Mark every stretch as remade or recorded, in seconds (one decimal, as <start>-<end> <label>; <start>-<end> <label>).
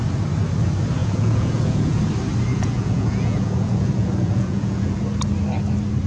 0.0-1.0 recorded; 1.0-2.0 remade; 2.0-2.5 recorded; 2.5-5.0 remade; 5.0-6.1 recorded